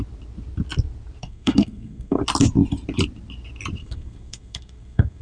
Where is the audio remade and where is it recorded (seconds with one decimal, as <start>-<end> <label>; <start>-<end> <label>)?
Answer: 0.0-1.2 recorded; 1.2-2.2 remade; 2.2-3.8 recorded; 3.8-5.2 remade